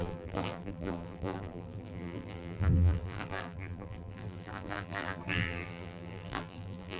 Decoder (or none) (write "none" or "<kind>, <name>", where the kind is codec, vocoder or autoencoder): vocoder, BigVGAN v2